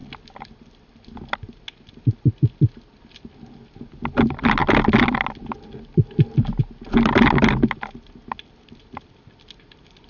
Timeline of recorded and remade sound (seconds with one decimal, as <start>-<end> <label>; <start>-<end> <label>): 0.0-10.1 recorded